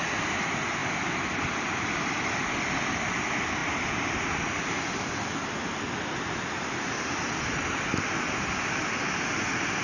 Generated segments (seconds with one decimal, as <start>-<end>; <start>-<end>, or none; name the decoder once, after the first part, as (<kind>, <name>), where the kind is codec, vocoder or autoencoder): none